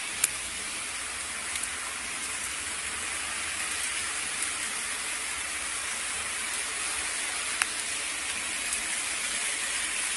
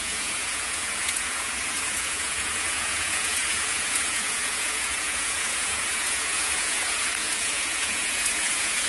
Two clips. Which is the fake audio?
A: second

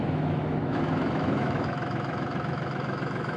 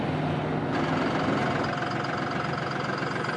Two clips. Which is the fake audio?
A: first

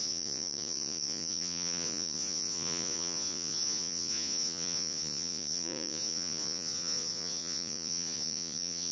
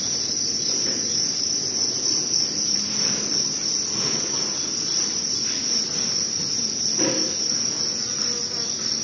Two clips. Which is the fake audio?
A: first